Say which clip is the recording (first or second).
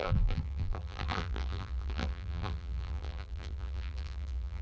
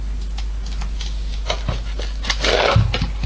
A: second